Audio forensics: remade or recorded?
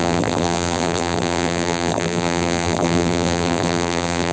remade